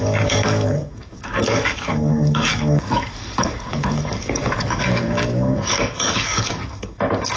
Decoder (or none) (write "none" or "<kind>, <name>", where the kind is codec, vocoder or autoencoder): codec, DAC